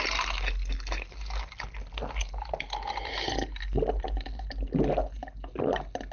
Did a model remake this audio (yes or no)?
no